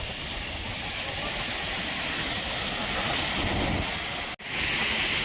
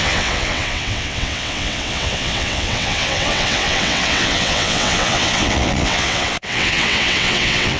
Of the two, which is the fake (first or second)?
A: second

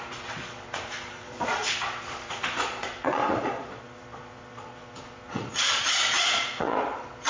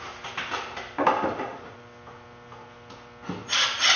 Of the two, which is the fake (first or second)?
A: first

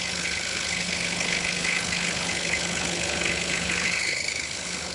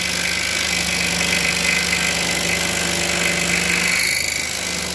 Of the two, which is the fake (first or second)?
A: first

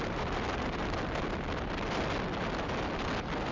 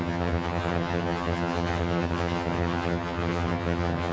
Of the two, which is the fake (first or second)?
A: second